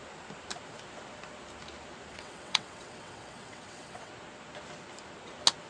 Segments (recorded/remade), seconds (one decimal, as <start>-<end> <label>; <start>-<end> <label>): 0.0-2.1 recorded; 2.1-4.1 remade; 4.1-5.7 recorded